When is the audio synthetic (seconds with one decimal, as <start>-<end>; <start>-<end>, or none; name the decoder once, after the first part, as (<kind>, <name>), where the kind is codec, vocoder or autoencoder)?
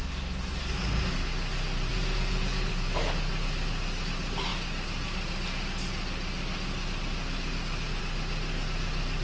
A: 1.9-2.7 (vocoder, Vocos)